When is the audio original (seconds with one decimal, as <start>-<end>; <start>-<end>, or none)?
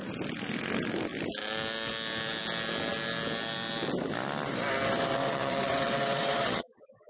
0.0-5.1